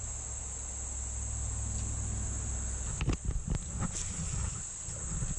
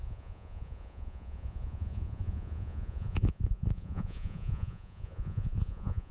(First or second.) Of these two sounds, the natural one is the first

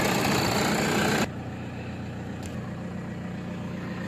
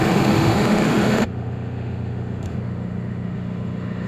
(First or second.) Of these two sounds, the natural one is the first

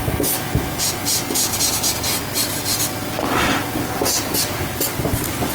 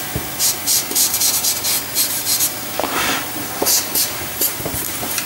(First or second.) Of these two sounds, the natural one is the first